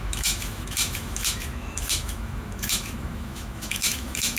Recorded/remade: remade